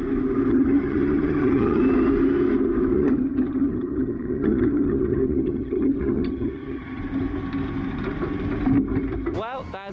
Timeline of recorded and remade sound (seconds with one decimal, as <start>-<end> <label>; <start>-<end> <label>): 0.0-0.5 recorded; 0.5-1.8 remade; 1.8-2.9 recorded; 2.9-7.0 remade; 7.0-9.9 recorded